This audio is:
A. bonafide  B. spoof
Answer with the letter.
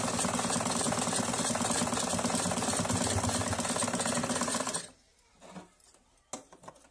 A